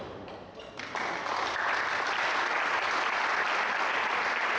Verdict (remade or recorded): recorded